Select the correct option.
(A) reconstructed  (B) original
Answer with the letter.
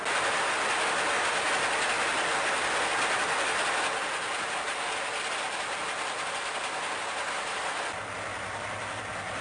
B